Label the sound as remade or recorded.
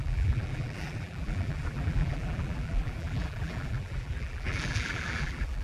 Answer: remade